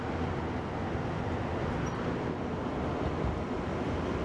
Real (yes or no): yes